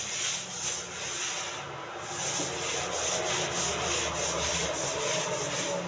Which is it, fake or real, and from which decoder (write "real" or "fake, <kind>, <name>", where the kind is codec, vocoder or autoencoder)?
real